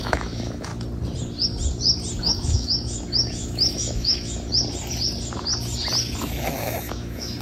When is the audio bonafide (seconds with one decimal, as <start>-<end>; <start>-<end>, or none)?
0.7-2.2; 4.5-6.2